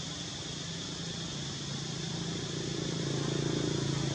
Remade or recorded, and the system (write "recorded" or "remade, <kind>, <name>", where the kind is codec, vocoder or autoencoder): recorded